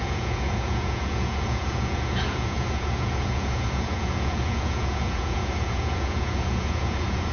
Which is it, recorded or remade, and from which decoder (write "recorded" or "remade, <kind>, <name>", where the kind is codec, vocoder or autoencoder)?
remade, vocoder, Vocos